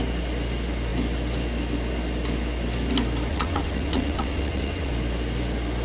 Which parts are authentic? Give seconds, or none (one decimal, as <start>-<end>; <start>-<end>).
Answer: 0.0-3.3; 4.9-5.8